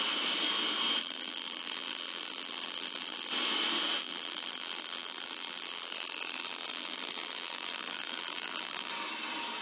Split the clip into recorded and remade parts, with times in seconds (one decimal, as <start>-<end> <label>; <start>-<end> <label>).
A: 0.0-1.0 recorded; 1.0-3.3 remade; 3.3-4.0 recorded; 4.0-8.9 remade; 8.9-9.6 recorded